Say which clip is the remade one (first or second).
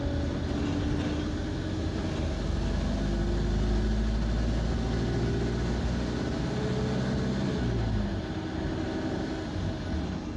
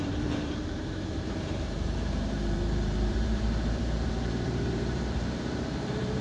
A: second